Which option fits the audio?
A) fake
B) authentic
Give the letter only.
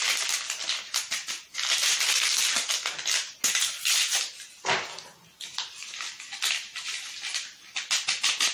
B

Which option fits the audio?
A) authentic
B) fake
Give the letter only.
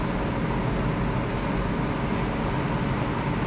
A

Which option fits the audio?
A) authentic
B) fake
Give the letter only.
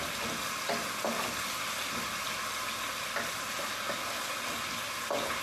A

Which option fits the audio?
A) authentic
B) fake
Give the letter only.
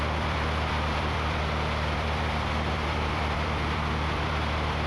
B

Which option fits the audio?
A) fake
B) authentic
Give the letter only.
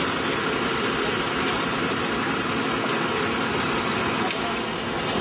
B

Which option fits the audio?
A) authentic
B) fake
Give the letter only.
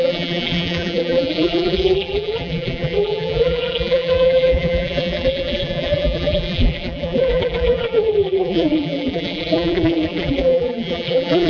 B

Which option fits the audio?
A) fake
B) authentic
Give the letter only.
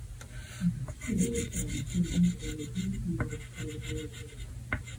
B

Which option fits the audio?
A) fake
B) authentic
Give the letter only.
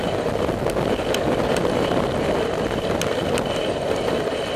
B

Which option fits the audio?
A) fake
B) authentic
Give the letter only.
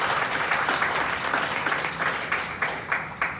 B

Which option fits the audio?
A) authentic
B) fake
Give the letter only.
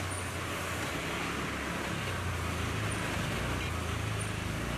A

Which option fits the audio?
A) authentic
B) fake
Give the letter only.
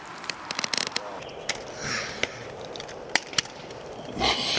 B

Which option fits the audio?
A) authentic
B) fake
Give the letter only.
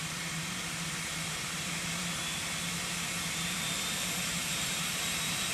B